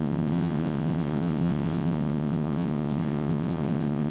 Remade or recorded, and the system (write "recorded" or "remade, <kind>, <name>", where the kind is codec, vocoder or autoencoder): remade, vocoder, WaveNeXt